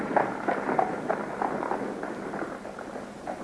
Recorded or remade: recorded